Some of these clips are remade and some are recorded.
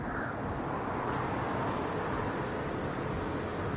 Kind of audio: recorded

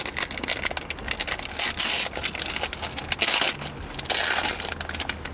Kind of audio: recorded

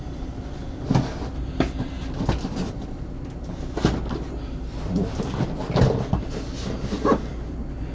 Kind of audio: recorded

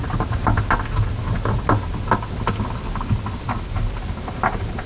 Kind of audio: recorded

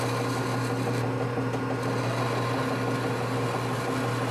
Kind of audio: recorded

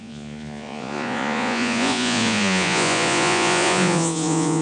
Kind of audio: remade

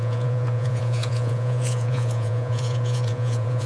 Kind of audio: remade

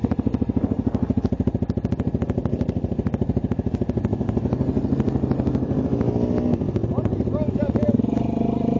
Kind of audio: recorded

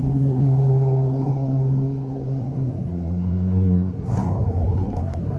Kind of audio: remade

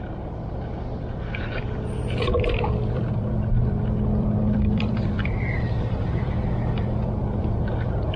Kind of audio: remade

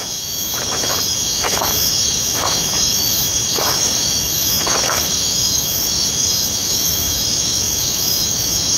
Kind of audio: remade